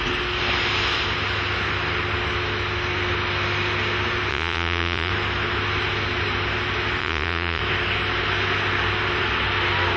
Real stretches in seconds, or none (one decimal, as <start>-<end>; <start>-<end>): 0.0-4.3; 5.1-7.0; 7.6-10.0